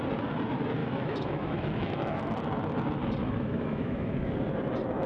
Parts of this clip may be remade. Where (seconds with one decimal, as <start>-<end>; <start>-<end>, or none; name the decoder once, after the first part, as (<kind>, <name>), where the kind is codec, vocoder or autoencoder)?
0.8-2.2 (autoencoder, DAC-VAE); 3.2-4.1